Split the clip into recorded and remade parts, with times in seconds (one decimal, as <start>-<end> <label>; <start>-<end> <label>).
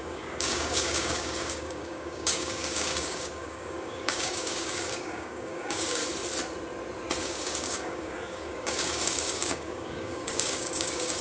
0.0-6.0 remade; 6.0-7.2 recorded; 7.2-11.2 remade